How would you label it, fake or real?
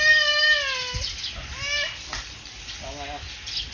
real